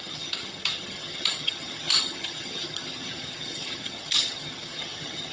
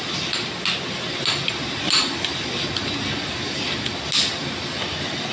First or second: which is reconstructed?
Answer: first